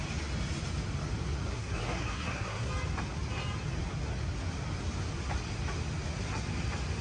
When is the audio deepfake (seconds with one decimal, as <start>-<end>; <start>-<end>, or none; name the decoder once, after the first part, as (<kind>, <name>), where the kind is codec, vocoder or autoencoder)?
1.5-2.7 (codec, SNAC)